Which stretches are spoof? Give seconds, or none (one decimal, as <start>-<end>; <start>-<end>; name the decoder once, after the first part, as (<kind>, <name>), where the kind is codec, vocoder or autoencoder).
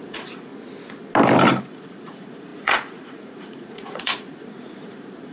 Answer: 0.0-0.5 (vocoder, Vocos); 1.6-5.3